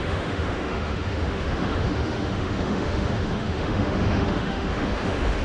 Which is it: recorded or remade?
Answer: remade